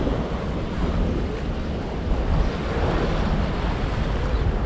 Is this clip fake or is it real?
real